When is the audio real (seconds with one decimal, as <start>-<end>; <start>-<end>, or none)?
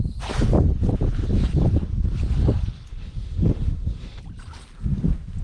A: 0.0-2.9; 4.2-5.4